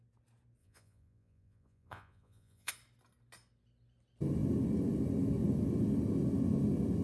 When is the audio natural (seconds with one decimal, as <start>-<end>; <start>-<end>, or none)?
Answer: 0.0-0.6; 2.7-7.0